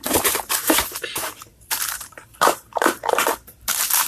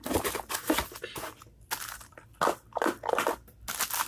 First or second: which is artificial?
first